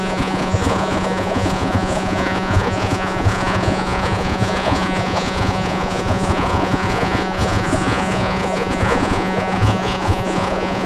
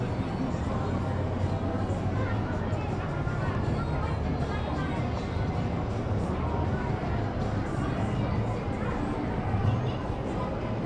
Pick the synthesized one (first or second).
first